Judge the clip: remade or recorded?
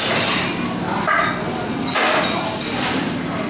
recorded